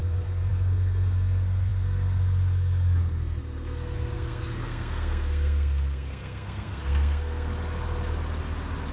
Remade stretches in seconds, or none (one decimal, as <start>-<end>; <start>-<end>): 0.0-7.5